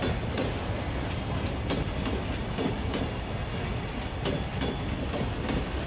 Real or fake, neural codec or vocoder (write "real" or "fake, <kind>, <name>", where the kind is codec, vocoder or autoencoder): real